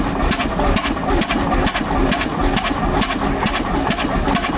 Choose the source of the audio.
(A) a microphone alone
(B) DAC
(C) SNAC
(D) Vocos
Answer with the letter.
A